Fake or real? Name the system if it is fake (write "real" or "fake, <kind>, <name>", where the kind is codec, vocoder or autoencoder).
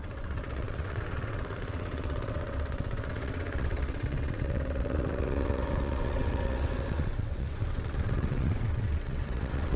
fake, vocoder, WaveNeXt